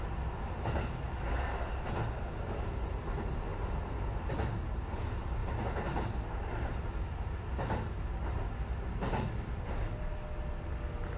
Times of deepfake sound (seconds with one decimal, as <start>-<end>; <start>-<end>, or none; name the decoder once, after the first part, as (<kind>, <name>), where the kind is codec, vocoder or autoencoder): 3.5-4.3 (vocoder, BigVGAN v2)